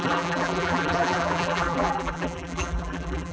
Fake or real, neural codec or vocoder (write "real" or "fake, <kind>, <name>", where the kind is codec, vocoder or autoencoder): fake, vocoder, BigVGAN v2